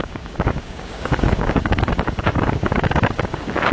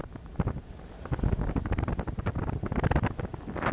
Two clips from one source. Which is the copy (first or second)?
first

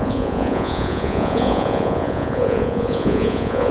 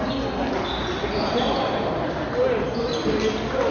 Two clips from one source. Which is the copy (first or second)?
first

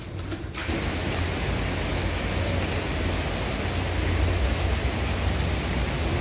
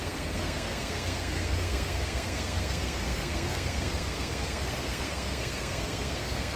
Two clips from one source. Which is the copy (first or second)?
second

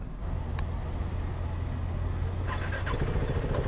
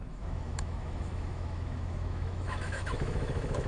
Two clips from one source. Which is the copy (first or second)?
second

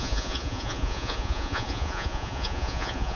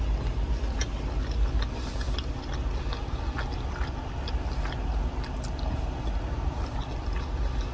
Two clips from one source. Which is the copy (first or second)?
first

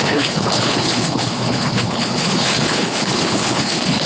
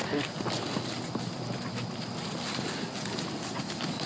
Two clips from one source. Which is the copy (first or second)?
first